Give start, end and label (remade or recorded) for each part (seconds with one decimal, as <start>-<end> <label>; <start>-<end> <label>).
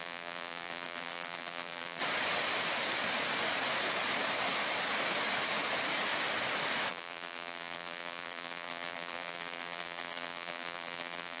0.0-2.0 remade; 2.0-6.9 recorded; 6.9-11.4 remade